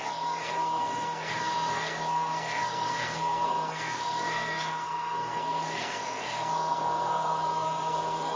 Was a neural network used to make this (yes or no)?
yes